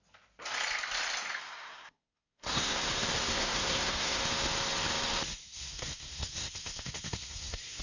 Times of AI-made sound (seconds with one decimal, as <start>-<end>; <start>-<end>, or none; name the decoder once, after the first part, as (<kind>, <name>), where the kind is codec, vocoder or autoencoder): 1.4-2.8 (codec, SNAC); 3.3-4.2; 5.3-7.8